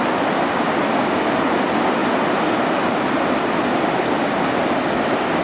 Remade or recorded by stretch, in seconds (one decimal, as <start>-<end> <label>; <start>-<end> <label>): 0.0-5.4 recorded